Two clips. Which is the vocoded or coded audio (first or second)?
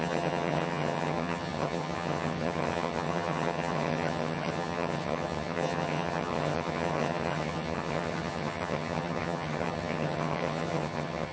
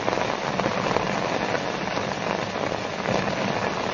first